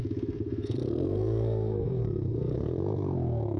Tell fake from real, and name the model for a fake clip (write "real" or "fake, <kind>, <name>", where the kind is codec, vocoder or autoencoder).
fake, codec, SNAC